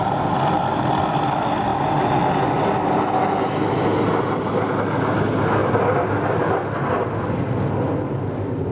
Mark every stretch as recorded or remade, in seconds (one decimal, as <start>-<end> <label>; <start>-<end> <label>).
0.0-5.6 recorded; 5.6-6.5 remade; 6.5-8.7 recorded